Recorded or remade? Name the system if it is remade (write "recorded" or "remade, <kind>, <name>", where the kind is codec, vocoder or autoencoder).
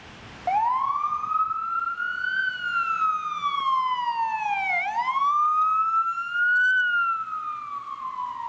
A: recorded